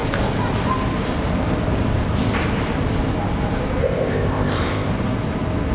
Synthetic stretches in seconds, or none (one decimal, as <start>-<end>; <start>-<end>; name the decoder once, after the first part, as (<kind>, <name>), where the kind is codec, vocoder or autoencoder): 3.8-4.9 (codec, ZipCodec)